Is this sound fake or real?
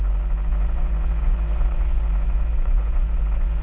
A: fake